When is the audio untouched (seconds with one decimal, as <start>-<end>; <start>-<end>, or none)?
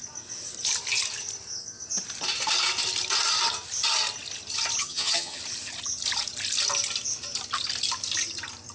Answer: 0.0-4.8; 5.4-8.7